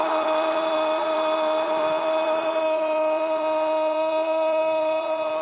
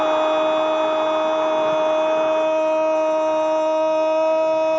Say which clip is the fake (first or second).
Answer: first